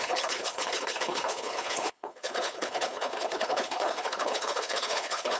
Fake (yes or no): yes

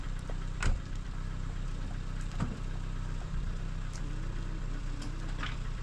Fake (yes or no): yes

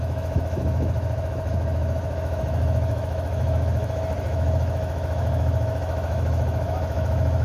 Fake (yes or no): yes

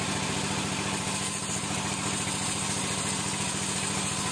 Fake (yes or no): no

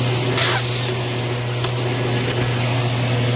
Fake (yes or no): no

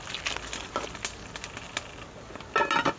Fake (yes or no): no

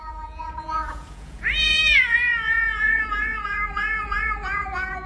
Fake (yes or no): yes